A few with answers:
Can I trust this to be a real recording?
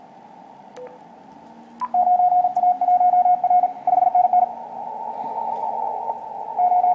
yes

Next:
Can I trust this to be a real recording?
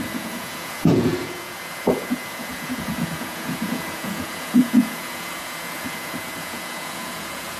no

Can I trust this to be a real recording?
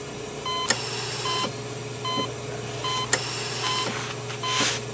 yes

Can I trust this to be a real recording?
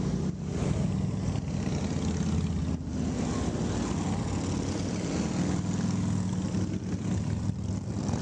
yes